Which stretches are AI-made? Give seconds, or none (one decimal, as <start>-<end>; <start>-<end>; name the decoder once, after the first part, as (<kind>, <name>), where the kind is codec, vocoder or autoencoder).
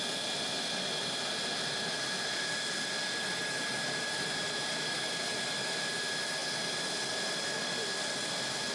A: none